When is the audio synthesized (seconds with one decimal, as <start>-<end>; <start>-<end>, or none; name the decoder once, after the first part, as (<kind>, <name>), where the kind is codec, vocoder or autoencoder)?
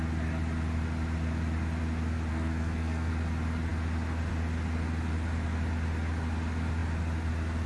2.3-3.1 (codec, SNAC)